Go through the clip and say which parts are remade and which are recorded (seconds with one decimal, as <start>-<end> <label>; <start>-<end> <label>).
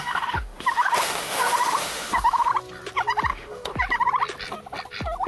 0.0-2.5 remade; 2.5-3.3 recorded; 3.3-3.7 remade; 3.7-5.3 recorded